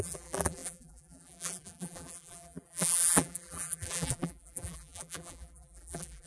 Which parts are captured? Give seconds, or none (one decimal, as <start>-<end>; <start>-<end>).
none